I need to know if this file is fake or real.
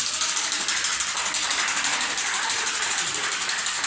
real